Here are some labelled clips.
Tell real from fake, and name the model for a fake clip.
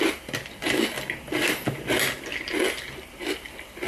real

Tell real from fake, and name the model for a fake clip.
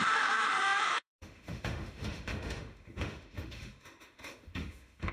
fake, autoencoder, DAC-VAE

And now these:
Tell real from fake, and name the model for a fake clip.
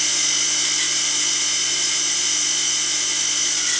real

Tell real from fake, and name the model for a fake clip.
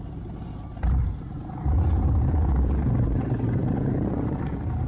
fake, vocoder, BigVGAN v2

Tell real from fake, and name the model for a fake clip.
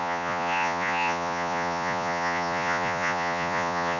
fake, vocoder, Vocos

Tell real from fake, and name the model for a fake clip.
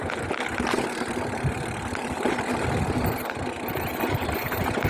real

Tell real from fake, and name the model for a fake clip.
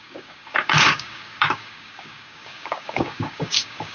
fake, codec, DAC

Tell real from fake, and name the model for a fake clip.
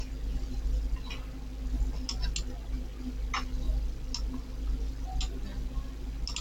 real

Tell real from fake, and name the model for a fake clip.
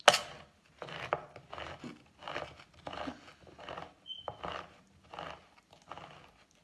real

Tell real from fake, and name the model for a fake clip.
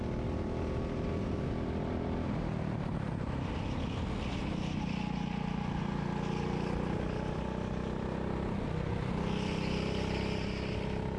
real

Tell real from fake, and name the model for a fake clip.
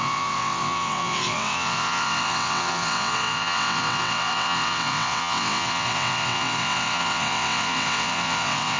fake, vocoder, WaveNeXt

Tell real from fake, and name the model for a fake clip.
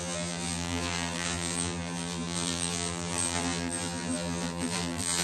fake, vocoder, BigVGAN v2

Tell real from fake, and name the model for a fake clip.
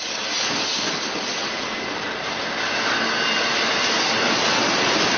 real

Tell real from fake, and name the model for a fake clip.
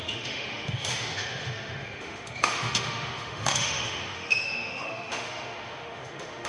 fake, autoencoder, DAC-VAE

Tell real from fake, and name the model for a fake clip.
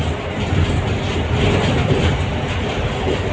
real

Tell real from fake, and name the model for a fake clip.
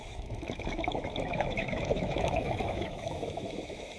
fake, autoencoder, DAC-VAE